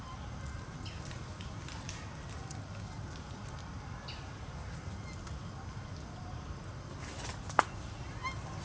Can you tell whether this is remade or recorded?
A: recorded